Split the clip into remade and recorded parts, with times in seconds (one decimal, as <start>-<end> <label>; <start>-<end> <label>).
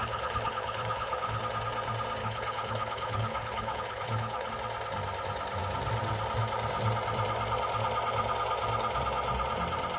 0.0-1.4 remade; 1.4-2.2 recorded; 2.2-4.5 remade; 4.5-10.0 recorded